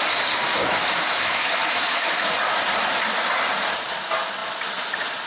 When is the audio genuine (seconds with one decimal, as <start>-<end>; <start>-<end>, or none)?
0.0-0.6; 2.3-5.3